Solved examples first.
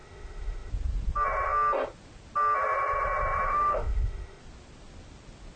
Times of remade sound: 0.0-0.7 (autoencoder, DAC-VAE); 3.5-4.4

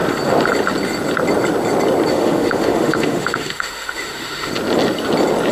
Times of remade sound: 2.1-4.5 (autoencoder, DAC-VAE)

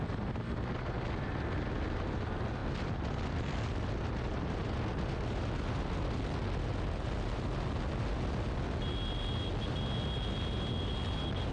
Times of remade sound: none

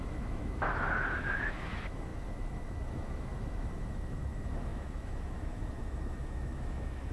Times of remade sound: 0.0-7.1 (autoencoder, DAC-VAE)

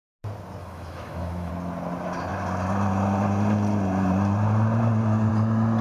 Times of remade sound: 0.6-1.5 (autoencoder, DAC-VAE)